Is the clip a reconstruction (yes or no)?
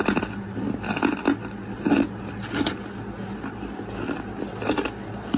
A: no